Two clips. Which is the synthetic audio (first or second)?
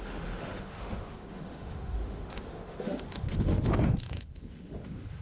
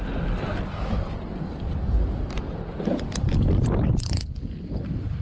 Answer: first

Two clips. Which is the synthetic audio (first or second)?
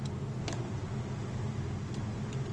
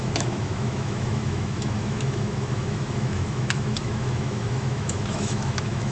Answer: second